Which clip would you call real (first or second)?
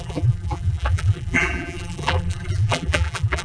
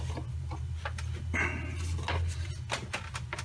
second